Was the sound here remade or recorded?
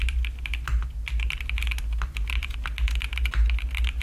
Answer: recorded